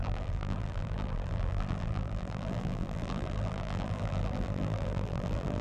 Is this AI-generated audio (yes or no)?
yes